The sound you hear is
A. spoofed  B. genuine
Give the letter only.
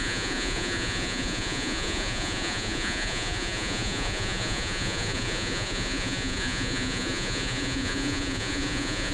A